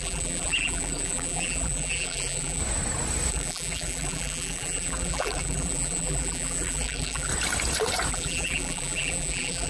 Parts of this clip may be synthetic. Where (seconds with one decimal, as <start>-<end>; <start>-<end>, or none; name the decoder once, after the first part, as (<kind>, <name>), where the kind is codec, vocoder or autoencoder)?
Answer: 0.0-2.6 (vocoder, BigVGAN v2); 3.3-7.3; 8.1-9.7